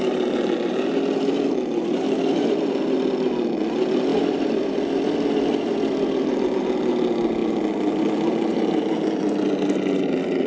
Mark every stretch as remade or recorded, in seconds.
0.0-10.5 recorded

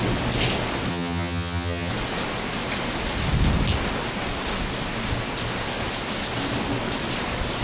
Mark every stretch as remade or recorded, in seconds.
0.0-0.9 recorded; 0.9-1.9 remade; 1.9-7.6 recorded